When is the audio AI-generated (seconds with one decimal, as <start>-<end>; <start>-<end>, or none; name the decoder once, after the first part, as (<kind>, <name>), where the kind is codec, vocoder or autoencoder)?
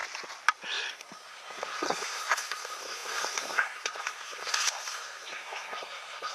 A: 0.9-6.3 (codec, SNAC)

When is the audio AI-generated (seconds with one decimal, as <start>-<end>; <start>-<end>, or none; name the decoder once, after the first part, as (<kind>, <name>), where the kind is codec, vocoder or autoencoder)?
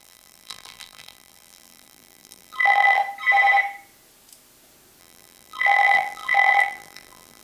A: 0.0-3.0 (vocoder, BigVGAN v2); 5.0-7.4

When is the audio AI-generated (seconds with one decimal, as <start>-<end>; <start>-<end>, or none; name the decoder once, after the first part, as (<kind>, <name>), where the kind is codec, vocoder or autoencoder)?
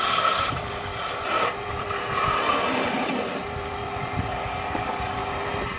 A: 0.0-0.9 (codec, DAC); 4.3-5.2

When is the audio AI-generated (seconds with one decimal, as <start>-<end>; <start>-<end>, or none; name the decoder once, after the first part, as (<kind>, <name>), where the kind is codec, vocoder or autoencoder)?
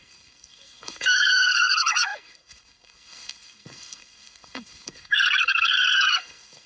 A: 0.0-6.7 (codec, SNAC)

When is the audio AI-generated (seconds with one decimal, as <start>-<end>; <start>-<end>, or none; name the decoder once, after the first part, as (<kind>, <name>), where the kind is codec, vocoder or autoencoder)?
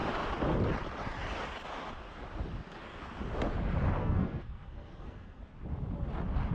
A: 4.0-5.4 (codec, SNAC)